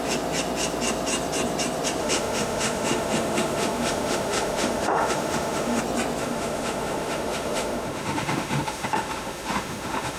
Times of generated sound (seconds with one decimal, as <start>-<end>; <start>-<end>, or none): 2.0-5.8; 6.2-10.2